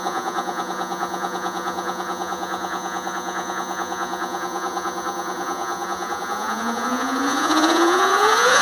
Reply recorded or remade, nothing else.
remade